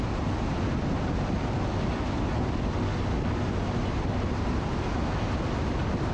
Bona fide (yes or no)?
yes